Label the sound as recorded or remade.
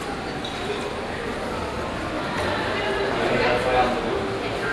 recorded